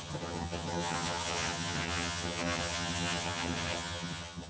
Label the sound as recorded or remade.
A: remade